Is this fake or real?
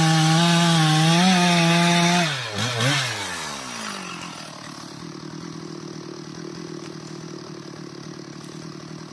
real